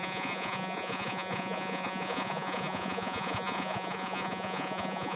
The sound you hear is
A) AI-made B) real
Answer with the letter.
A